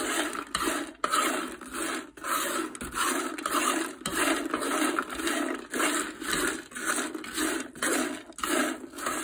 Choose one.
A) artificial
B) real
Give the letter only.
B